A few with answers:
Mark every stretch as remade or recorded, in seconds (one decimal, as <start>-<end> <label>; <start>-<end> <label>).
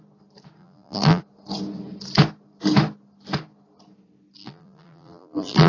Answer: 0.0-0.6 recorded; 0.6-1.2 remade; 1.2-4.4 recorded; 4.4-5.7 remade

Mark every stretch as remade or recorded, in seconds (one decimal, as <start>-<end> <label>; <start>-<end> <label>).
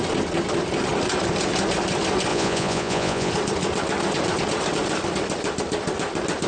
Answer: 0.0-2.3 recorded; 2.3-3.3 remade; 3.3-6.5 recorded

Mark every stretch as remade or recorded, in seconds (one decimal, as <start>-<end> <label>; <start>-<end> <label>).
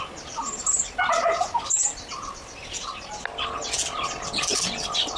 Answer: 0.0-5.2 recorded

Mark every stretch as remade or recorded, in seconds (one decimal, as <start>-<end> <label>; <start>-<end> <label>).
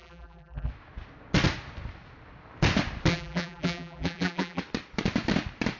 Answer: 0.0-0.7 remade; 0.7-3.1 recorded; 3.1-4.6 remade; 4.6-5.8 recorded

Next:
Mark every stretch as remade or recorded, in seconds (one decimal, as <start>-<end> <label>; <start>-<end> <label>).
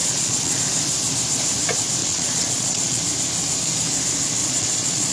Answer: 0.0-0.6 remade; 0.6-2.0 recorded; 2.0-3.0 remade; 3.0-4.4 recorded; 4.4-5.1 remade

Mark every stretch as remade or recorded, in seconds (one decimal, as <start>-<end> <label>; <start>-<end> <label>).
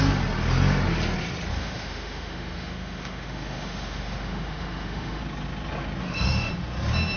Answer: 0.0-1.5 recorded; 1.5-5.2 remade; 5.2-6.0 recorded; 6.0-6.5 remade; 6.5-7.2 recorded